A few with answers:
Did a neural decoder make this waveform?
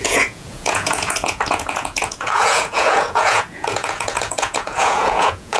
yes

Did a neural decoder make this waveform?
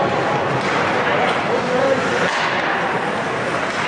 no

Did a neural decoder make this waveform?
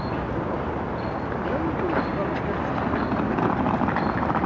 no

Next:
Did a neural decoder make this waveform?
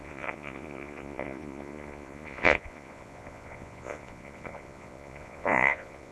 yes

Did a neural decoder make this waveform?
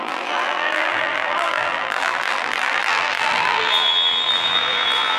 yes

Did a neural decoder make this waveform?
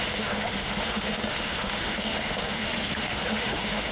yes